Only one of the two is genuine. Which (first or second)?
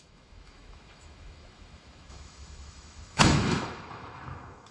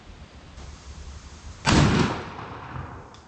second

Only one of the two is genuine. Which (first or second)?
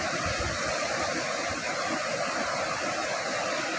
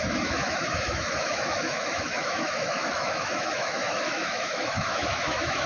first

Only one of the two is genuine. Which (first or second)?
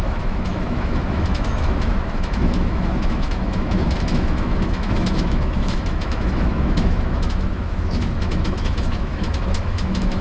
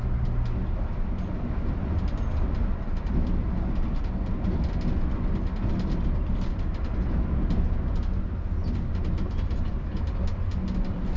second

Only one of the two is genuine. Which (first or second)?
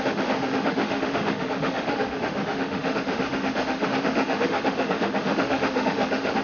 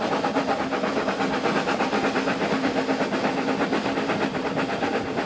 second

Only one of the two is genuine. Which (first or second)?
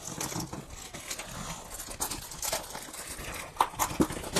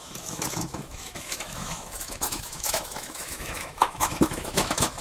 first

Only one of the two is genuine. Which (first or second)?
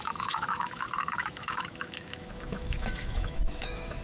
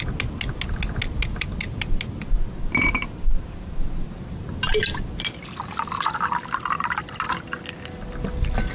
second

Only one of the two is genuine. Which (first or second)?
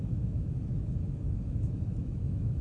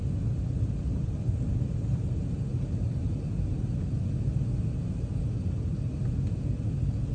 second